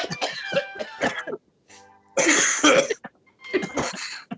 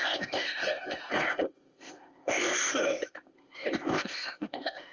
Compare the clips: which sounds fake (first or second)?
second